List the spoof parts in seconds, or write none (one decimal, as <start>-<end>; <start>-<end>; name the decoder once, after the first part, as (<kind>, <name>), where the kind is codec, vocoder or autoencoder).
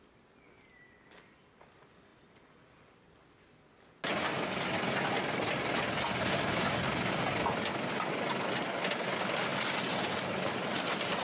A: none